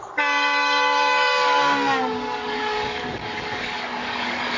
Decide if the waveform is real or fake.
fake